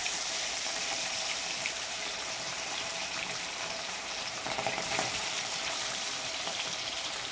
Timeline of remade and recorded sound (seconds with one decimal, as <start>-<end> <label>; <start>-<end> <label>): 0.0-7.3 remade